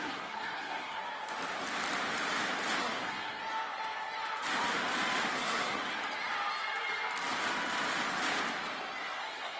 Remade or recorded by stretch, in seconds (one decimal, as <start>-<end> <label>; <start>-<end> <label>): 0.0-1.0 remade; 1.0-2.8 recorded; 2.8-3.4 remade; 3.4-5.3 recorded; 5.3-5.8 remade; 5.8-9.2 recorded; 9.2-9.6 remade